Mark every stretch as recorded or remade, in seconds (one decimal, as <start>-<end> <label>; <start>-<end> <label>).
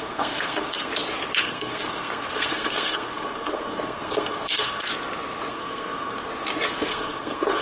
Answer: 0.0-0.9 remade; 0.9-1.4 recorded; 1.4-4.9 remade; 4.9-5.5 recorded; 5.5-6.3 remade; 6.3-6.9 recorded; 6.9-7.6 remade